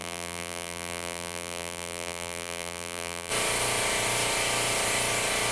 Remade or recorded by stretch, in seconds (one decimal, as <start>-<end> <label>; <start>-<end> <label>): 0.0-3.3 remade; 3.3-5.5 recorded